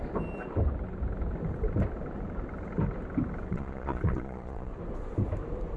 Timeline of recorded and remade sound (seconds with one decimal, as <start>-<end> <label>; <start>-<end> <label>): 0.0-3.5 recorded; 3.5-4.7 remade; 4.7-5.8 recorded